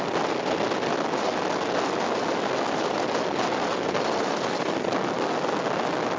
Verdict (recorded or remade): recorded